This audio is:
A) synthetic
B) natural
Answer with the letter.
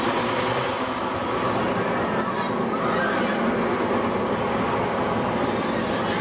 B